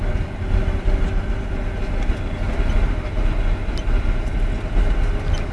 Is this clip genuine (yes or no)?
yes